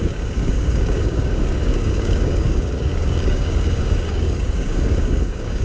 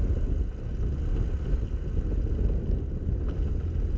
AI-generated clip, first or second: first